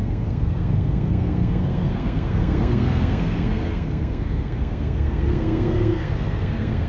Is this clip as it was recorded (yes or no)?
no